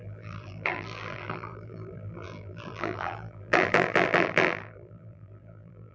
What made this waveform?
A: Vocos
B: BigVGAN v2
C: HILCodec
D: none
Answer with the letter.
B